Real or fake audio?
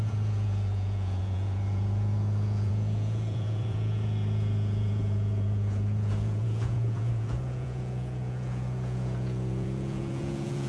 fake